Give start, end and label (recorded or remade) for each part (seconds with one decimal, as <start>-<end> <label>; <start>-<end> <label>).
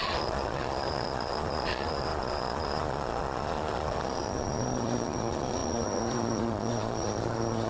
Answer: 0.0-7.7 remade